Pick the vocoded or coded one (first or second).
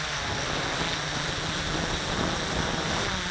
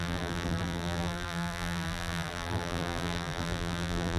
second